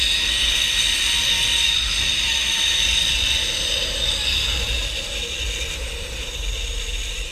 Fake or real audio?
real